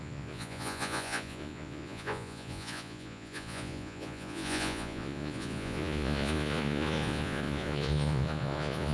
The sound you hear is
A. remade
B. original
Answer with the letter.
A